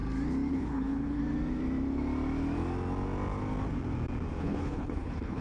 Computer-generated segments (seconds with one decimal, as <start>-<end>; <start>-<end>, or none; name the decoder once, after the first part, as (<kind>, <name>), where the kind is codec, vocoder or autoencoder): 0.5-1.2 (codec, HILCodec); 4.4-5.4